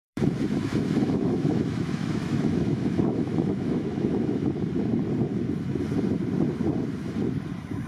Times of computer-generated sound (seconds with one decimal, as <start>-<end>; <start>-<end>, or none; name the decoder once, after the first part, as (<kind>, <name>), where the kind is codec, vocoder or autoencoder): 0.0-4.5 (autoencoder, DAC-VAE)